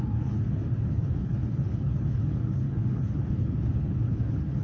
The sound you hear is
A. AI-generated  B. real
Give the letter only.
A